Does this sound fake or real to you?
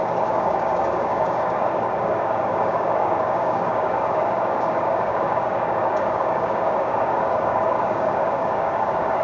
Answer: fake